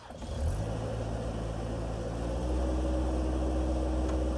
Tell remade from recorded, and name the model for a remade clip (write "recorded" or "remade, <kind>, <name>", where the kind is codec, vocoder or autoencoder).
recorded